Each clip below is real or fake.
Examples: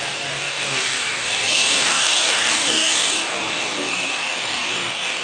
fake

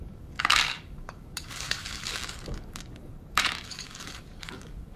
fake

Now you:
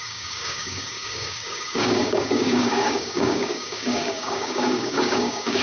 fake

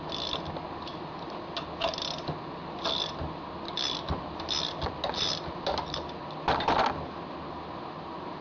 real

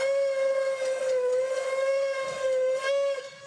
fake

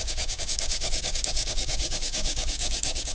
fake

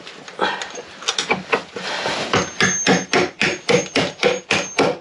real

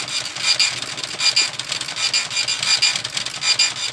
real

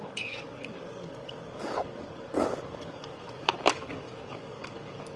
fake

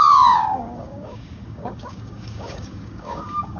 fake